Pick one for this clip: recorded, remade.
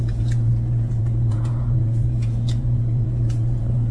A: remade